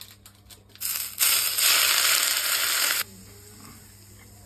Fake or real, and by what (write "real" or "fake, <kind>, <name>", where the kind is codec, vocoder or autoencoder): real